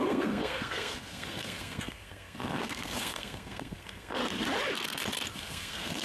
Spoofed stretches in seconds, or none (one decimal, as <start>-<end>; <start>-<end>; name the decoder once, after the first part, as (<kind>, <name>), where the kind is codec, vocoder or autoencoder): 0.0-4.2 (codec, SNAC); 5.3-6.0